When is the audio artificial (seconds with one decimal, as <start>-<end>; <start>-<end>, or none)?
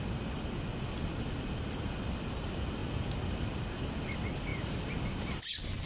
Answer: 2.8-3.6; 4.5-5.4